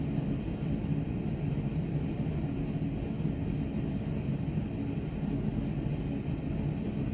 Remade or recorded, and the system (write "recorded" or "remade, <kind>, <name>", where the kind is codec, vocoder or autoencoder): recorded